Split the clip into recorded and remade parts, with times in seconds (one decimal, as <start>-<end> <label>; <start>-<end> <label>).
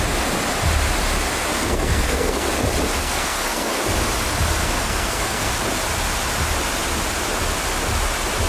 0.0-1.5 recorded; 1.5-2.5 remade; 2.5-3.0 recorded; 3.0-3.7 remade; 3.7-4.6 recorded; 4.6-5.5 remade; 5.5-8.5 recorded